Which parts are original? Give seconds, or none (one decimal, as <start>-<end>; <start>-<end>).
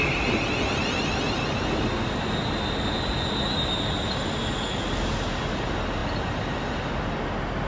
0.0-7.7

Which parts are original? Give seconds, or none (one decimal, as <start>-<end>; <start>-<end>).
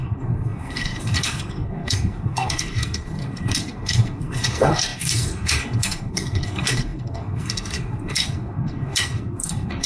none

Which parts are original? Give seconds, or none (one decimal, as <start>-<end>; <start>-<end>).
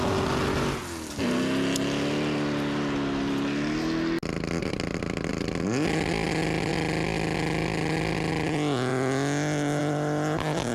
0.0-10.7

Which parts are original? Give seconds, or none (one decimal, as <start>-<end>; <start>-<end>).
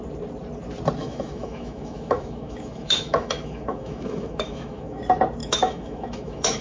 0.0-1.0; 5.0-5.4